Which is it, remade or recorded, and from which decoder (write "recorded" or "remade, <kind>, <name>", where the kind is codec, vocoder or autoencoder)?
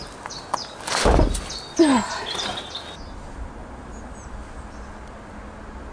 recorded